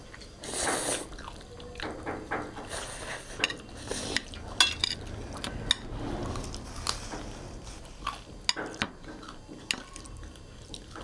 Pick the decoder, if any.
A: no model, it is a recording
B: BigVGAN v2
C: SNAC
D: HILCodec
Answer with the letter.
A